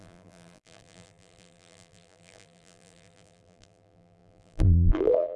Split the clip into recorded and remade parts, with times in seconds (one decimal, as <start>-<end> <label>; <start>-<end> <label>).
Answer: 0.0-5.4 remade